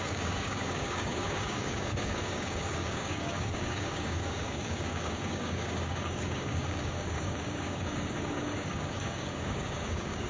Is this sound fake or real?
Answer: fake